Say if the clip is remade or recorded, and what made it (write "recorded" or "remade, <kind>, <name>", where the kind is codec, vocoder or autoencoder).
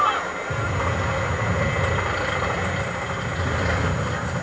recorded